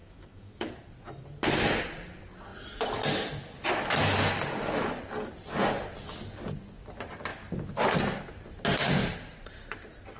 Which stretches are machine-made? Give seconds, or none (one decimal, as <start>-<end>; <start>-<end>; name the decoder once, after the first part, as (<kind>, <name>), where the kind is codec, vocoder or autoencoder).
0.0-0.7 (autoencoder, DAC-VAE)